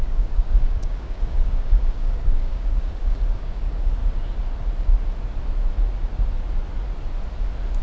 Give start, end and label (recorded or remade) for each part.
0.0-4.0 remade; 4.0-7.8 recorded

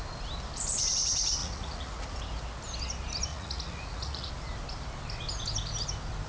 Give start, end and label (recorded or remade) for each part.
0.0-1.4 recorded; 1.4-2.2 remade; 2.2-3.3 recorded; 3.3-4.3 remade; 4.3-6.3 recorded

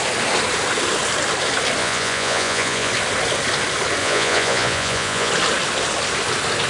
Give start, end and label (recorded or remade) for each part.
0.0-1.8 recorded; 1.8-2.9 remade; 2.9-4.0 recorded; 4.0-5.3 remade; 5.3-6.7 recorded

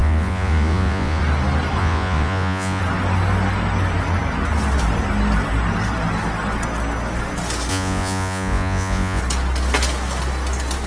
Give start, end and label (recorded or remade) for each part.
0.0-1.2 remade; 1.2-1.8 recorded; 1.8-2.8 remade; 2.8-7.7 recorded; 7.7-9.2 remade; 9.2-10.9 recorded

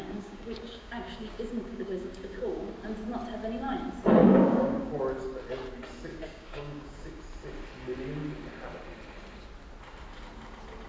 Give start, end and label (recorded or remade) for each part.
0.0-2.7 remade; 2.7-4.2 recorded; 4.2-4.9 remade; 4.9-6.1 recorded; 6.1-7.2 remade; 7.2-10.9 recorded

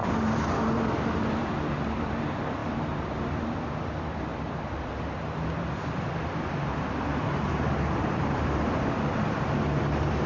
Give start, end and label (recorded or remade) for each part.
0.0-10.3 remade